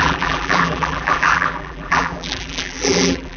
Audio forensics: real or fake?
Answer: fake